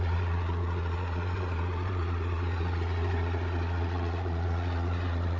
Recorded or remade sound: remade